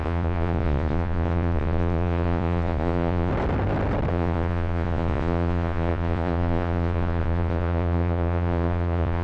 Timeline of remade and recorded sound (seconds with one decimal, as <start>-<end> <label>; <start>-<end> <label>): 0.0-3.3 remade; 3.3-4.1 recorded; 4.1-9.2 remade